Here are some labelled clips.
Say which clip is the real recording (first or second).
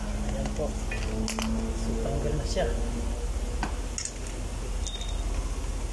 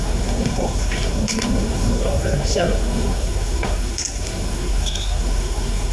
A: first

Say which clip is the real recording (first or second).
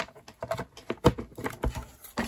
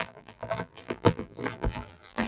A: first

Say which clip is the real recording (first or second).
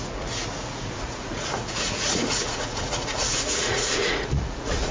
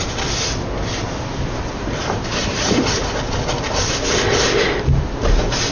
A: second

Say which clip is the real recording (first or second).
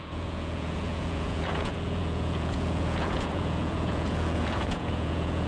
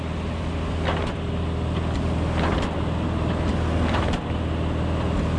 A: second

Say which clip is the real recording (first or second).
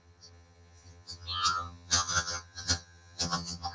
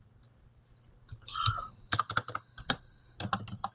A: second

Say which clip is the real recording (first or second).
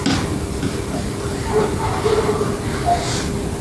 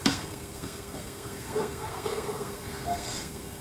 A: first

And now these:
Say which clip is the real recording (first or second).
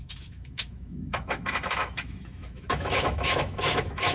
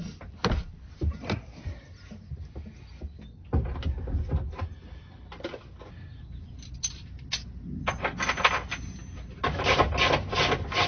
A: second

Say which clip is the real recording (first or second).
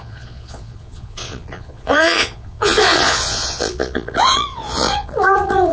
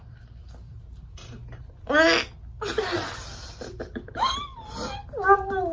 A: second